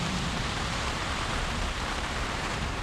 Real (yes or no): no